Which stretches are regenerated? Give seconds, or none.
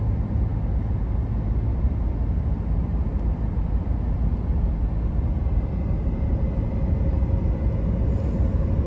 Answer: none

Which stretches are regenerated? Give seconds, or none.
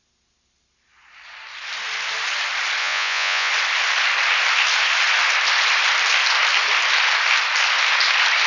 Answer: 2.8-3.5 (vocoder, Vocos)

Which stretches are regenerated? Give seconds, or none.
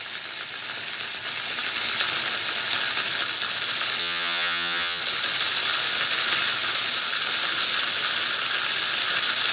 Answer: 4.0-5.0 (vocoder, HiFi-GAN)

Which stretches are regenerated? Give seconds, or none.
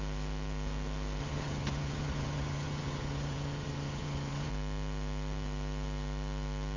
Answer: 1.2-4.5 (vocoder, HiFi-GAN)